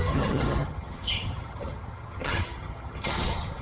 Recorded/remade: remade